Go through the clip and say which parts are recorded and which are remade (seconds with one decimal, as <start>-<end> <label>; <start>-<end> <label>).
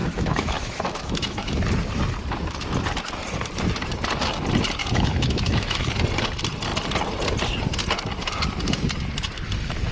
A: 0.0-1.5 remade; 1.5-4.8 recorded; 4.8-5.9 remade; 5.9-9.9 recorded